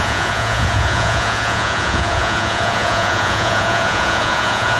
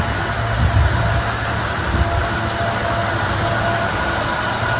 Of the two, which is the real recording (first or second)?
second